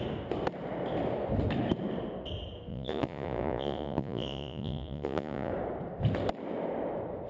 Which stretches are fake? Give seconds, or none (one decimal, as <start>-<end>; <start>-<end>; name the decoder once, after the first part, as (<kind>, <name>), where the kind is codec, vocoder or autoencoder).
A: 2.7-5.5 (vocoder, Vocos)